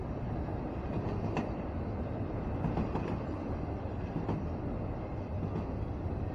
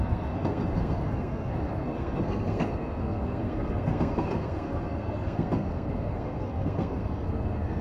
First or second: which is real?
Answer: first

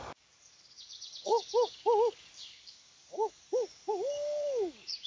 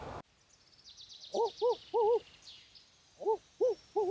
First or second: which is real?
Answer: second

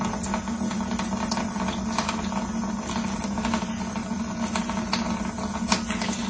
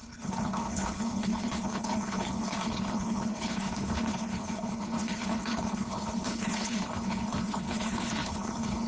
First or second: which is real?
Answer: first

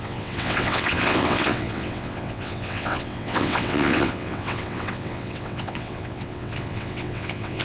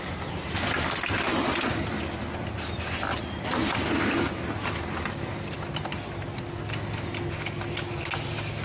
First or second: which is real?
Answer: second